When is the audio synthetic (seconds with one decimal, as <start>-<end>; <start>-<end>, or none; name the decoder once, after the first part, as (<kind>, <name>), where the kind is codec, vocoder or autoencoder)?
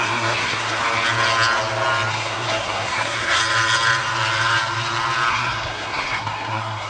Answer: 0.0-0.8 (codec, SNAC); 2.1-3.4; 5.3-6.9